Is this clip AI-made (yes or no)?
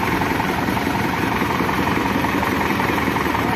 yes